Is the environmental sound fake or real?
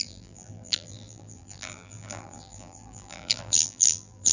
fake